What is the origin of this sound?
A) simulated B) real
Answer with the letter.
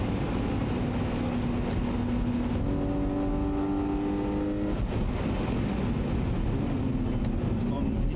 B